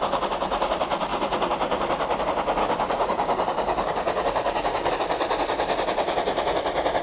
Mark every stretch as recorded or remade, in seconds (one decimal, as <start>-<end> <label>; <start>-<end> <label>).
0.0-2.6 recorded; 2.6-4.9 remade; 4.9-7.0 recorded